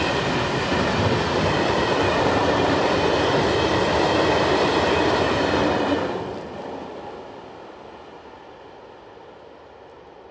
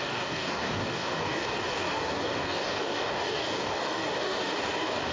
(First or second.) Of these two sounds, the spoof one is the second